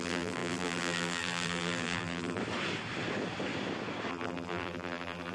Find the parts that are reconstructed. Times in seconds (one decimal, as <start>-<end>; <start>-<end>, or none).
0.0-2.4; 4.1-5.3